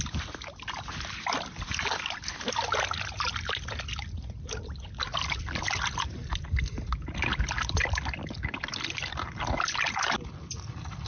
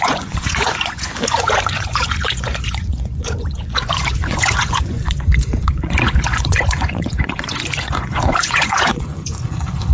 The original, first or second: first